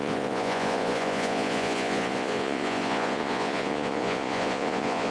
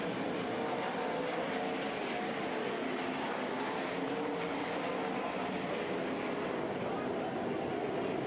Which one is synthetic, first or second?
first